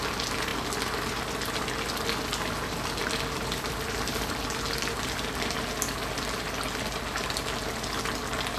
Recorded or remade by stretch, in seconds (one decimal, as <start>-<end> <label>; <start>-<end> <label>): 0.0-8.6 recorded